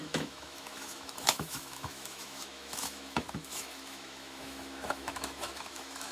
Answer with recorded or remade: remade